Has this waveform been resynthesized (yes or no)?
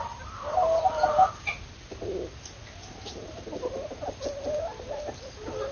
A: no